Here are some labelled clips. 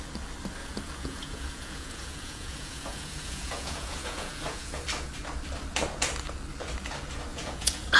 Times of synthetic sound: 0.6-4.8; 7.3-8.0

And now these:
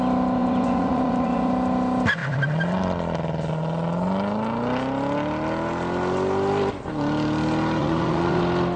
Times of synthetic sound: 0.4-1.5; 7.8-8.4

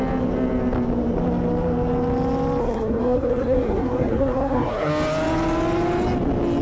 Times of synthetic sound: 2.6-4.9

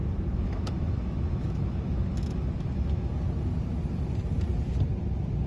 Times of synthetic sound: 0.0-3.1

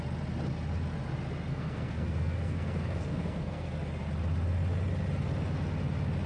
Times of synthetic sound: 1.5-3.7

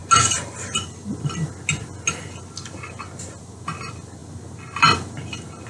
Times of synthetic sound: none